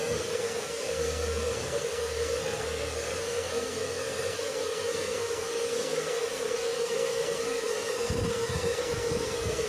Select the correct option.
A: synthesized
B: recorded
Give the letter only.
A